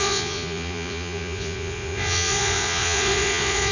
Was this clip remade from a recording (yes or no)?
yes